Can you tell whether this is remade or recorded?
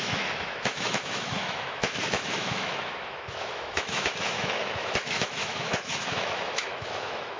remade